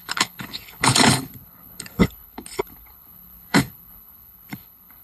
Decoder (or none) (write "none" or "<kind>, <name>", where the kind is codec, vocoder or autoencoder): codec, HILCodec